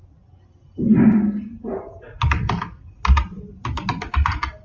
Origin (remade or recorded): recorded